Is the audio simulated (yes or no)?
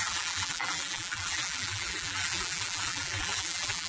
yes